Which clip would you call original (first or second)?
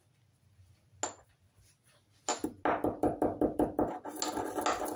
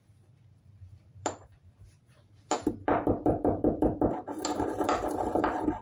first